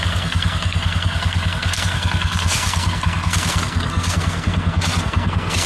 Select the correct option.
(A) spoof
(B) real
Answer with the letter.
A